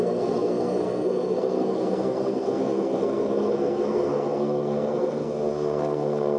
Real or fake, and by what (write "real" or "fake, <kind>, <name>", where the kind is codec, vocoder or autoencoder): fake, codec, SNAC